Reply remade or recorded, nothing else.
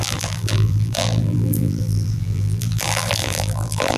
remade